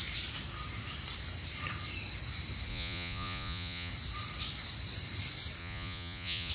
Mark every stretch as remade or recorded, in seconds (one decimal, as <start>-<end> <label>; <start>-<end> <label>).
0.0-2.7 recorded; 2.7-3.9 remade; 3.9-5.6 recorded; 5.6-6.5 remade